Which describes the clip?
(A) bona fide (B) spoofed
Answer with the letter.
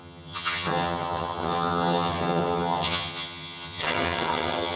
B